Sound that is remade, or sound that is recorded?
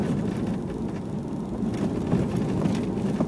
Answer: recorded